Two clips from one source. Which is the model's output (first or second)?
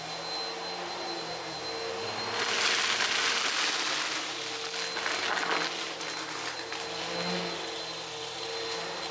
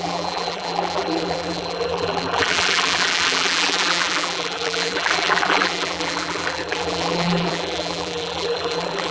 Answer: second